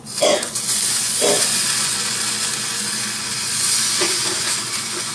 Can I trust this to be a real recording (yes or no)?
no